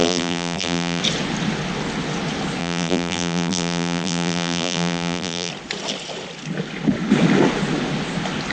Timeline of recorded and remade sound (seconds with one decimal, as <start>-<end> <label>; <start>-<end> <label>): 0.0-1.0 remade; 1.0-2.6 recorded; 2.6-5.5 remade; 5.5-8.5 recorded

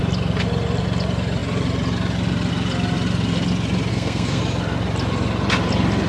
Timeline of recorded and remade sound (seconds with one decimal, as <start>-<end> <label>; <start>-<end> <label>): 0.0-3.9 recorded; 3.9-4.4 remade; 4.4-6.1 recorded